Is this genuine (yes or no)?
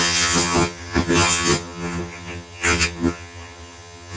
no